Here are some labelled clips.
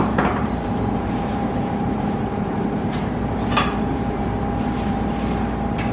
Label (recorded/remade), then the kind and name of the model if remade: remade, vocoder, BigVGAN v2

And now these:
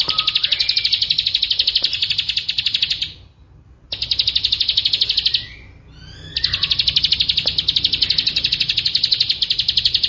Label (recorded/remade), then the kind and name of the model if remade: recorded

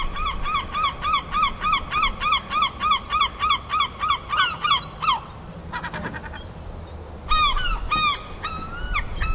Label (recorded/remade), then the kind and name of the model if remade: recorded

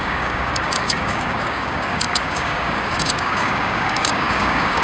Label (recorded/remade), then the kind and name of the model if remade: remade, codec, DAC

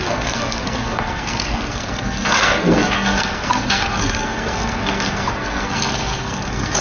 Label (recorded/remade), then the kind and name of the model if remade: remade, codec, SNAC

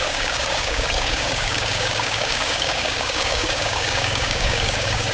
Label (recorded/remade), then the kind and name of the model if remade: remade, codec, DAC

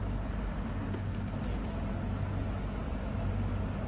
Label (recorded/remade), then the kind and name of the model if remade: recorded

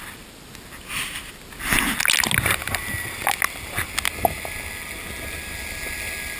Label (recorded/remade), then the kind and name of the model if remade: recorded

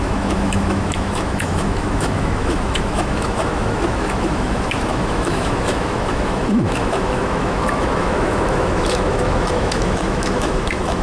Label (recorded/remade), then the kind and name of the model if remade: remade, autoencoder, DAC-VAE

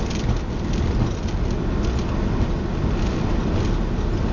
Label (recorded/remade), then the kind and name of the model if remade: recorded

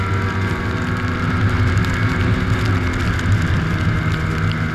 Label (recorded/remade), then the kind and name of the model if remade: recorded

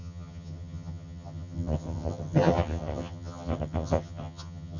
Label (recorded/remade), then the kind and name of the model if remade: remade, vocoder, HiFi-GAN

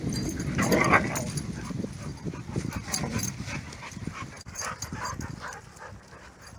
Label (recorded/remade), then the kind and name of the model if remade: recorded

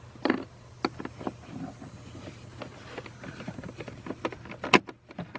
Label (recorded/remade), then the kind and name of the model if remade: recorded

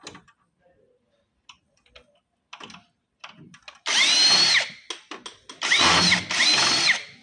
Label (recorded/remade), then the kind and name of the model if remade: recorded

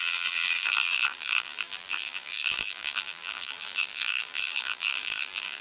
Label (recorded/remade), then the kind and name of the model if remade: remade, vocoder, BigVGAN v2